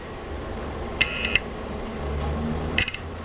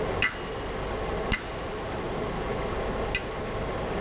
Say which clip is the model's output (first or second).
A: first